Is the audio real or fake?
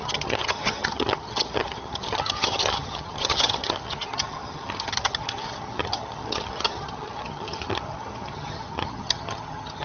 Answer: fake